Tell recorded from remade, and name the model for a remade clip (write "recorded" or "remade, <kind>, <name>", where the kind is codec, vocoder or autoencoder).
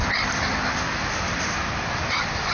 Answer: recorded